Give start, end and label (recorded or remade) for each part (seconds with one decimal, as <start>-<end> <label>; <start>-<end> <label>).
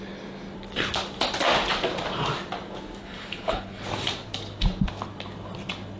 0.0-3.0 recorded; 3.0-3.8 remade; 3.8-6.0 recorded